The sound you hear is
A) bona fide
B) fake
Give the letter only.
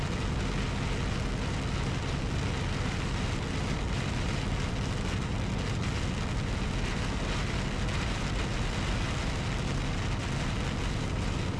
A